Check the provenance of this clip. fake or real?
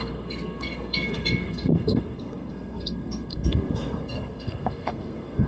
fake